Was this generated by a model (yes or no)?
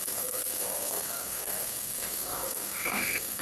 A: yes